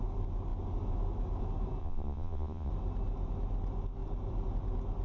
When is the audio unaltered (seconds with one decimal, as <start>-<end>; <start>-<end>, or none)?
0.0-1.8; 2.7-5.0